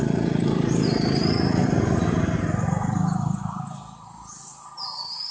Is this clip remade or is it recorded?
recorded